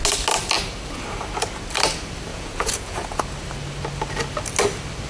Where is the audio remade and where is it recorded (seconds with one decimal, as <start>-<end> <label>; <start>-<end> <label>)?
0.0-2.3 recorded; 2.3-3.3 remade; 3.3-5.1 recorded

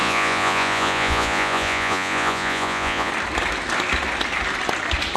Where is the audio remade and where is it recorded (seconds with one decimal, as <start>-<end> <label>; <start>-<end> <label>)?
0.0-3.1 remade; 3.1-5.2 recorded

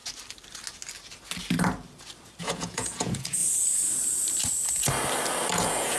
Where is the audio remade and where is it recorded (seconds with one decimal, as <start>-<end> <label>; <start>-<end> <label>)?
0.0-2.4 recorded; 2.4-3.4 remade; 3.4-5.5 recorded; 5.5-6.0 remade

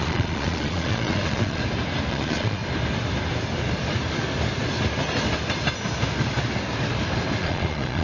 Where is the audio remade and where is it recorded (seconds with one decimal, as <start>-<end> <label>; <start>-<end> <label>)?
0.0-1.6 remade; 1.6-2.1 recorded; 2.1-2.6 remade; 2.6-7.4 recorded; 7.4-8.0 remade

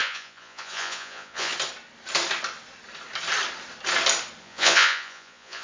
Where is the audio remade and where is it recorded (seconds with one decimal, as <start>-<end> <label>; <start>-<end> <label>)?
0.0-1.5 remade; 1.5-4.4 recorded; 4.4-5.6 remade

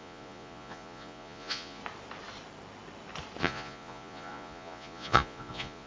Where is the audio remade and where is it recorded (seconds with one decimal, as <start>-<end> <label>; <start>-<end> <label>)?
0.0-1.8 remade; 1.8-3.4 recorded; 3.4-5.9 remade

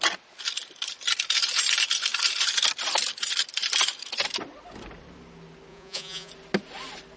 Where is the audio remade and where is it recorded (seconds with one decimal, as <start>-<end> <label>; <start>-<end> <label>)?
0.0-5.7 recorded; 5.7-6.3 remade; 6.3-7.2 recorded